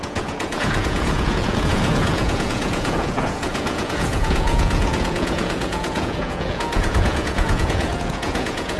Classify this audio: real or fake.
fake